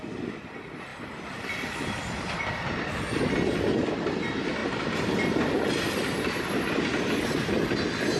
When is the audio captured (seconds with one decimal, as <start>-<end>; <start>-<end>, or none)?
0.0-0.9; 2.4-4.6; 7.0-8.2